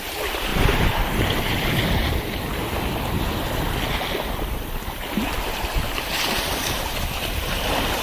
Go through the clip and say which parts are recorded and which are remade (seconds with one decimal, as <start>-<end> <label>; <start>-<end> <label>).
0.0-0.5 recorded; 0.5-2.1 remade; 2.1-8.0 recorded